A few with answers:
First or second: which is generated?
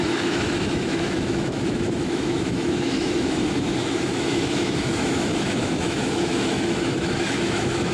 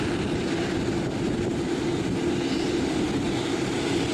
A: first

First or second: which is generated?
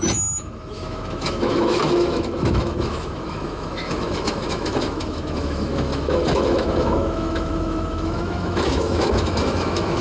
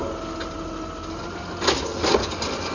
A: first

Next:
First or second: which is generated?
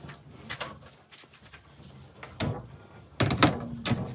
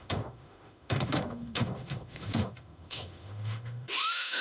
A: second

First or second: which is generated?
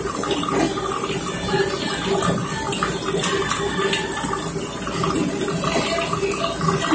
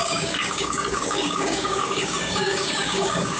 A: second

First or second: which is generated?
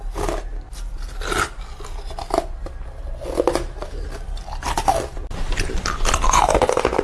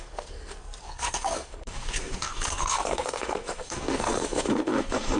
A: second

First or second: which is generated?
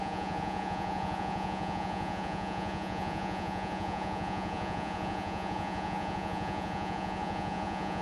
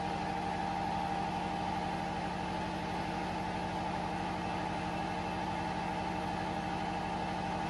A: first